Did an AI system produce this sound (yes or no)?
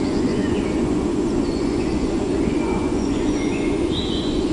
yes